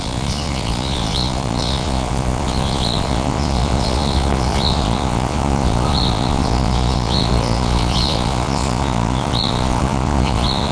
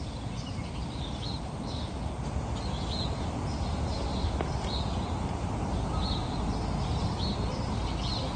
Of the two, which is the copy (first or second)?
first